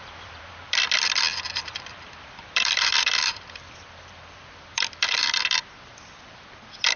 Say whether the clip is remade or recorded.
remade